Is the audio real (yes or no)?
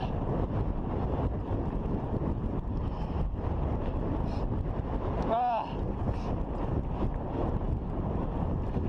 yes